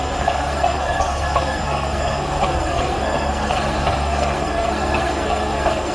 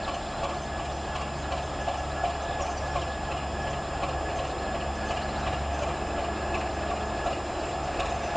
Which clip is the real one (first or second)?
second